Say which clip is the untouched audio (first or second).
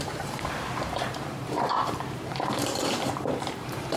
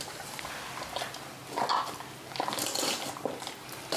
second